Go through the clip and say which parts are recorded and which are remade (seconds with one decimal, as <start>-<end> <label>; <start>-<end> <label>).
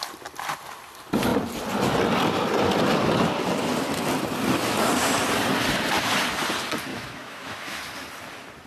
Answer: 0.0-6.9 recorded; 6.9-7.8 remade; 7.8-8.7 recorded